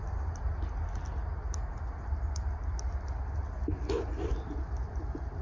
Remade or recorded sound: recorded